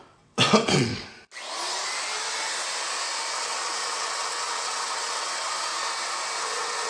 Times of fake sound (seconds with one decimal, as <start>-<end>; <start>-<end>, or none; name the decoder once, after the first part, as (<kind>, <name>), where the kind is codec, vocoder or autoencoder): 0.0-0.9 (vocoder, WaveNeXt); 3.3-5.7; 6.4-6.9